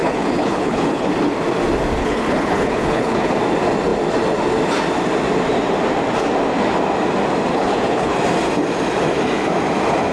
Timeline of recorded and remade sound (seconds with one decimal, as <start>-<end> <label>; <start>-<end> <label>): 0.0-1.1 remade; 1.1-2.0 recorded; 2.0-3.3 remade; 3.3-7.5 recorded; 7.5-8.2 remade; 8.2-10.1 recorded